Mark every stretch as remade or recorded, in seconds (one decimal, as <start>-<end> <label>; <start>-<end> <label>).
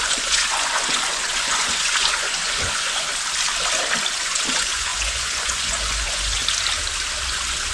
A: 0.0-3.1 remade; 3.1-4.1 recorded; 4.1-6.4 remade; 6.4-7.3 recorded; 7.3-7.7 remade